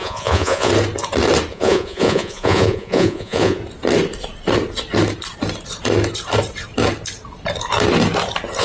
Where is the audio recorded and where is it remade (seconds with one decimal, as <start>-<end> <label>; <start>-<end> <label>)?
0.0-0.7 remade; 0.7-1.5 recorded; 1.5-3.6 remade; 3.6-8.6 recorded